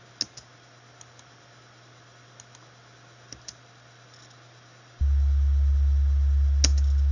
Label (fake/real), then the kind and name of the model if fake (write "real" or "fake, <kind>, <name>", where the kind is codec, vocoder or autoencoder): real